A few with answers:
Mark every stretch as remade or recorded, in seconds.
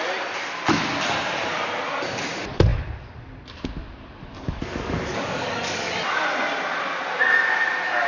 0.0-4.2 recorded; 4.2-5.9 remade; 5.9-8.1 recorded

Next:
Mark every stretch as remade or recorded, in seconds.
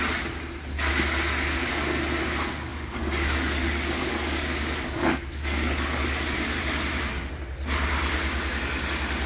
0.0-2.7 recorded; 2.7-6.6 remade; 6.6-9.3 recorded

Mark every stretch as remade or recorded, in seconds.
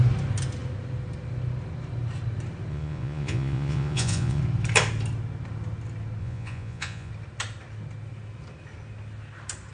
0.0-2.7 recorded; 2.7-4.4 remade; 4.4-6.2 recorded; 6.2-7.1 remade; 7.1-9.7 recorded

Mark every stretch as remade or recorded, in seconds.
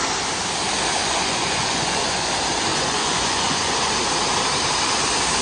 0.0-1.0 recorded; 1.0-2.3 remade; 2.3-2.7 recorded; 2.7-3.9 remade; 3.9-5.4 recorded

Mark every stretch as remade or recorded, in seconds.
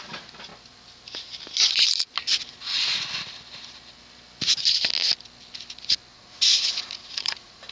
0.0-6.1 recorded; 6.1-7.7 remade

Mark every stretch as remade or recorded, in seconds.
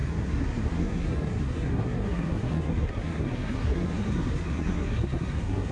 0.0-5.7 remade